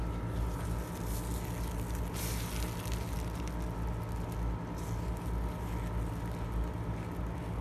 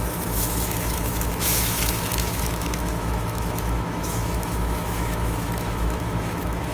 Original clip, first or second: first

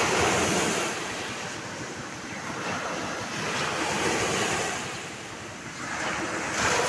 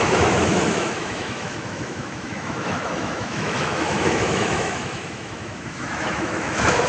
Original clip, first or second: first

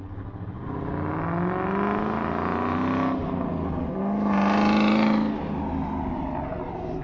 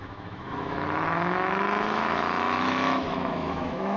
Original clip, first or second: first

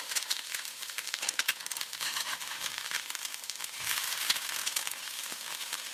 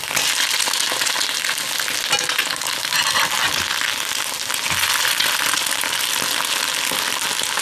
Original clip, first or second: second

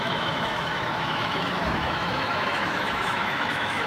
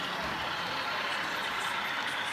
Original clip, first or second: second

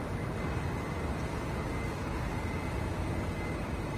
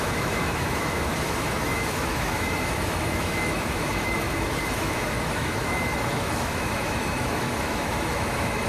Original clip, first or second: first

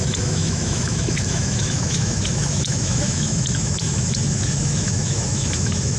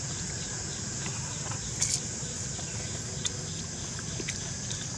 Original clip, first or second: second